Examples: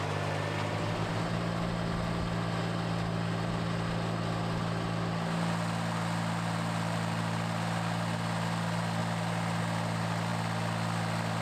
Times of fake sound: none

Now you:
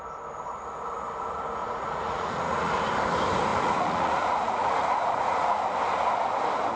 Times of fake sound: 1.6-2.8; 3.5-5.6

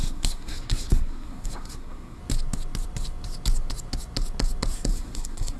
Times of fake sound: 0.0-2.2; 4.9-5.6

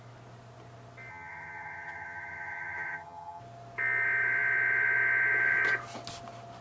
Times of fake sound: 1.1-3.4

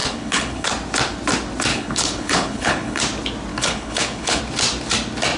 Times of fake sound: 0.0-0.7; 1.7-3.0; 3.5-4.4